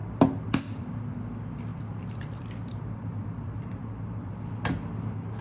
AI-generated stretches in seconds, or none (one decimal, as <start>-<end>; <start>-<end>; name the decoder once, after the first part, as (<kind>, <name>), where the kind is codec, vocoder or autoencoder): 0.0-0.9 (vocoder, BigVGAN v2); 1.7-4.6